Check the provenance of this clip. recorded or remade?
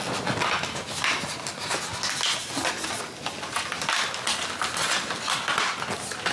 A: recorded